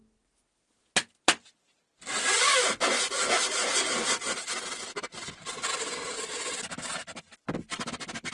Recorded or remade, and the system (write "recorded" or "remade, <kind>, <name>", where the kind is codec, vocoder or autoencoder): recorded